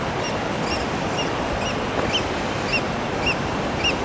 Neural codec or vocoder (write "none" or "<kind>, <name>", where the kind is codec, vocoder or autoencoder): none